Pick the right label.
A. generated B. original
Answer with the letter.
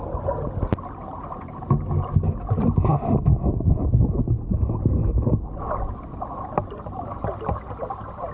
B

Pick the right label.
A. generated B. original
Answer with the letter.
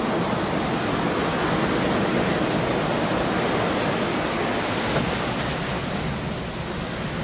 B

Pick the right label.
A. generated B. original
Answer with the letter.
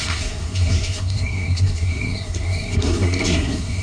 A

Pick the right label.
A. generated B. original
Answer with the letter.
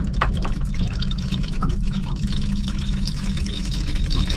A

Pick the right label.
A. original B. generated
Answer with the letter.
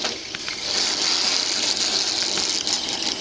A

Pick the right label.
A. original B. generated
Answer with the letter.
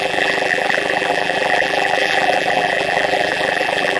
B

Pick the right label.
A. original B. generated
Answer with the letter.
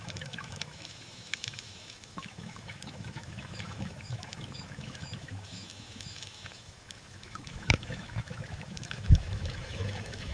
B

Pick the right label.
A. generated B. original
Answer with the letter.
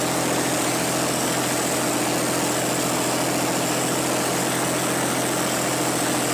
B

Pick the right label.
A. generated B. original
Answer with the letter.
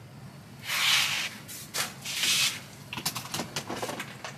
B